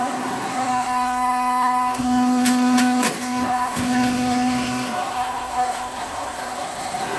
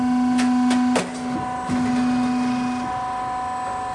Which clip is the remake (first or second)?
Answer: first